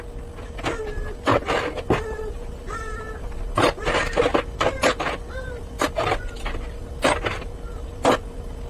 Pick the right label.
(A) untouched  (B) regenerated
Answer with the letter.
A